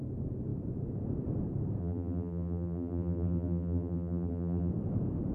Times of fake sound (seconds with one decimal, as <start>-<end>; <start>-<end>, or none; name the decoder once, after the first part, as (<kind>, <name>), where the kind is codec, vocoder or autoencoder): 1.8-4.7 (vocoder, BigVGAN v2)